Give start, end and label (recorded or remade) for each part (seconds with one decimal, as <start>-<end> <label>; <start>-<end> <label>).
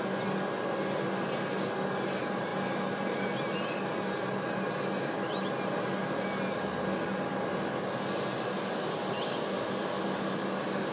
0.0-10.9 recorded